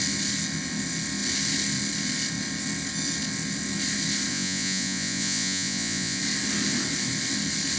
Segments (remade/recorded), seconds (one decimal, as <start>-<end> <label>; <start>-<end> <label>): 0.0-4.3 recorded; 4.3-6.2 remade; 6.2-7.8 recorded